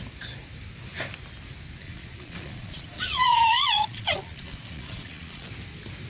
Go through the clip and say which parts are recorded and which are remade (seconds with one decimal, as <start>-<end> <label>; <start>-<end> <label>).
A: 0.0-1.8 recorded; 1.8-5.5 remade; 5.5-6.1 recorded